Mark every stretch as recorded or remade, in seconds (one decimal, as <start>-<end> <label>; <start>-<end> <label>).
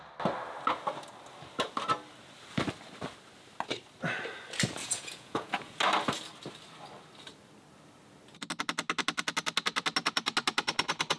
0.0-4.8 recorded; 4.8-5.8 remade; 5.8-11.2 recorded